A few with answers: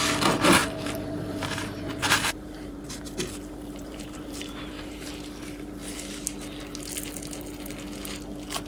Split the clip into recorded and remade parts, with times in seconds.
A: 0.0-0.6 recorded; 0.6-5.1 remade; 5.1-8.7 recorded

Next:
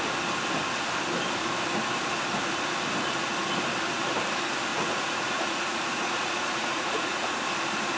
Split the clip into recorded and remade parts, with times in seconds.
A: 0.0-4.7 recorded; 4.7-7.4 remade; 7.4-8.0 recorded

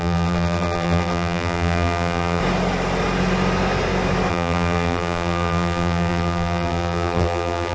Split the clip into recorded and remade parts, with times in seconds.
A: 0.0-2.4 remade; 2.4-4.3 recorded; 4.3-7.7 remade

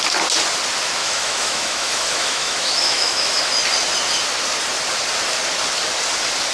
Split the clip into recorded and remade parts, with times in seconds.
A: 0.0-1.0 recorded; 1.0-3.4 remade; 3.4-6.5 recorded

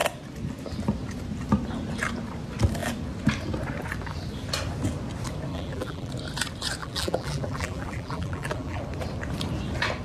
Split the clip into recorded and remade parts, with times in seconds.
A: 0.0-5.5 recorded; 5.5-6.1 remade; 6.1-6.8 recorded; 6.8-8.8 remade; 8.8-10.0 recorded